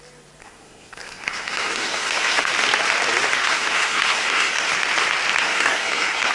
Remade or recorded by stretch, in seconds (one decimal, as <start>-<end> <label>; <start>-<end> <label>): 0.0-0.4 recorded; 0.4-2.5 remade; 2.5-3.4 recorded; 3.4-4.7 remade; 4.7-5.4 recorded; 5.4-6.3 remade